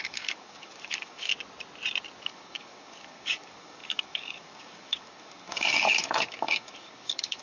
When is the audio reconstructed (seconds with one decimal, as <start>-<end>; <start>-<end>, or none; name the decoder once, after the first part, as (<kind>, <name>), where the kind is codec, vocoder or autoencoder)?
0.0-1.3 (codec, DAC); 2.2-7.4